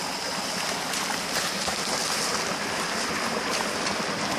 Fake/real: real